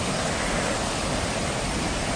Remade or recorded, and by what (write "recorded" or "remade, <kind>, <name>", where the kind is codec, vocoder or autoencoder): recorded